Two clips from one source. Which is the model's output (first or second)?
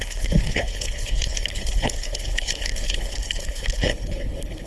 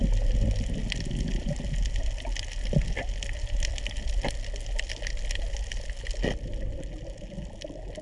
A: first